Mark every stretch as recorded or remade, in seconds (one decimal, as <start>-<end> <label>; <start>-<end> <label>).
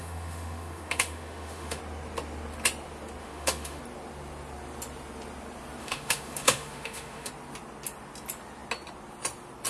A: 0.0-1.8 remade; 1.8-3.2 recorded; 3.2-3.8 remade; 3.8-5.8 recorded; 5.8-7.3 remade; 7.3-9.7 recorded